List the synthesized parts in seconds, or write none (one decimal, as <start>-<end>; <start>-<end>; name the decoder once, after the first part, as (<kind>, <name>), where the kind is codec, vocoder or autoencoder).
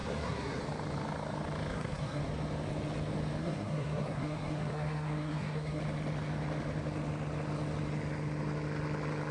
0.0-0.6 (codec, SNAC); 1.7-2.2; 3.4-5.8